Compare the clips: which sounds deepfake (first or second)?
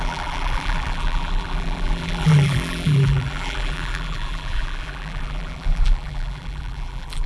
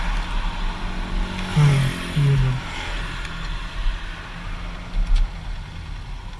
first